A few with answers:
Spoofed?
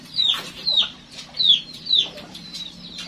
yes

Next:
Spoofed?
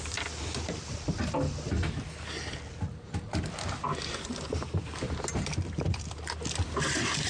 no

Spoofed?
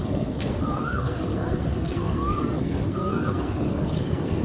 yes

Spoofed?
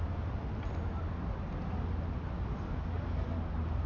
no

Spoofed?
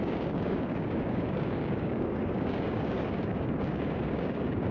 yes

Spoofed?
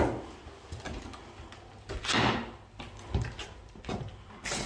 no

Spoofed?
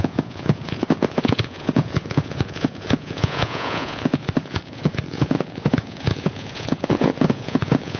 yes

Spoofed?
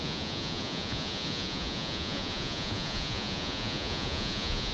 yes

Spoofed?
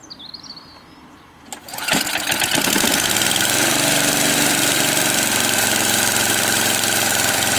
no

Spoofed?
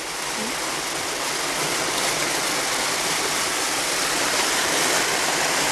no